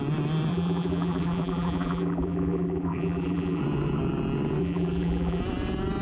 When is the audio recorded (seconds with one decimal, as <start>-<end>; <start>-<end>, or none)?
0.0-0.5; 3.6-4.6; 5.4-6.0